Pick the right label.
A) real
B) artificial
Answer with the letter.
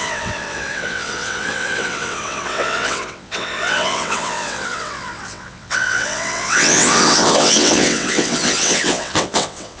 B